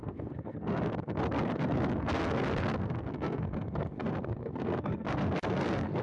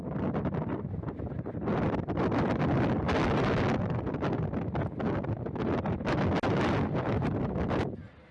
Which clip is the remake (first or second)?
first